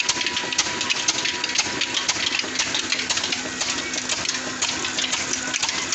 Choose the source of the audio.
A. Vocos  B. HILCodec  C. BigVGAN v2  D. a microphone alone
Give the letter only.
D